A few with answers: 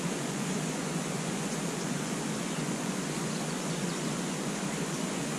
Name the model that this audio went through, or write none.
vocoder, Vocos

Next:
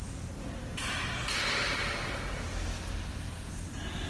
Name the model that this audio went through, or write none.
none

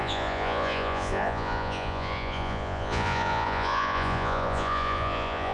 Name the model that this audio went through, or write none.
vocoder, Vocos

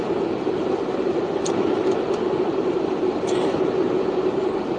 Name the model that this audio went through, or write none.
none